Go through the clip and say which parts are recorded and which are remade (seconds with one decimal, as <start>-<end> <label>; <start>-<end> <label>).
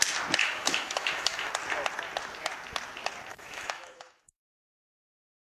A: 0.0-0.4 recorded; 0.4-1.5 remade; 1.5-3.3 recorded; 3.3-4.4 remade; 4.4-5.5 recorded